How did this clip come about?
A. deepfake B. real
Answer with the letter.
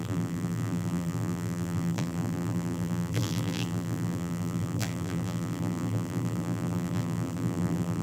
A